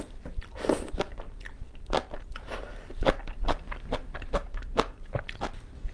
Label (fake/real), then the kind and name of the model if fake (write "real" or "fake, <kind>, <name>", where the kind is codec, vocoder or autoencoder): fake, vocoder, BigVGAN v2